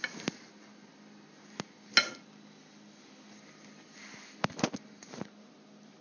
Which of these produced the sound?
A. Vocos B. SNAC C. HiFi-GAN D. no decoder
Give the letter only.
D